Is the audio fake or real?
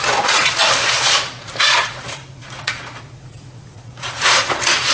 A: fake